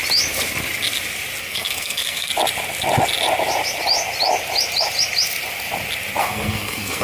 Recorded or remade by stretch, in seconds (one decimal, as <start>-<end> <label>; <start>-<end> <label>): 0.0-1.4 recorded; 1.4-2.3 remade; 2.3-6.2 recorded; 6.2-7.0 remade